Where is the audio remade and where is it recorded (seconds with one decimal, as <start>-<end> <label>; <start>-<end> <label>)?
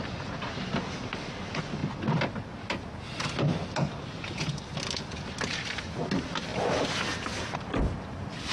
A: 0.0-8.5 recorded